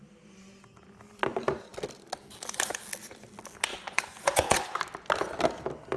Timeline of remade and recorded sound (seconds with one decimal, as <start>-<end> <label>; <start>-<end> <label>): 0.0-3.7 recorded; 3.7-4.8 remade; 4.8-6.0 recorded

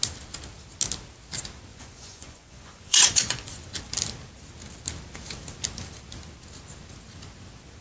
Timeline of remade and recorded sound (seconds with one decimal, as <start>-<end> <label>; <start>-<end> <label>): 0.0-1.7 recorded; 1.7-3.5 remade; 3.5-7.8 recorded